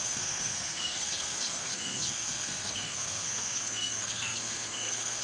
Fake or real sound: fake